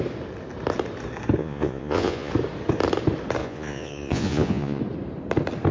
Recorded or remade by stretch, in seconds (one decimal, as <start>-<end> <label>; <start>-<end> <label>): 0.0-1.4 recorded; 1.4-2.3 remade; 2.3-3.4 recorded; 3.4-4.8 remade; 4.8-5.7 recorded